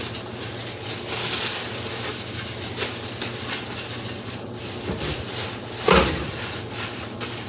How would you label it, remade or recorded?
recorded